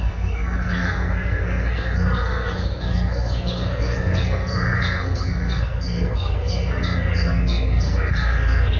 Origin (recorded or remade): remade